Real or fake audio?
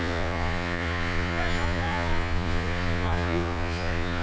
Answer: fake